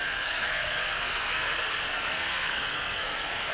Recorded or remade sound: remade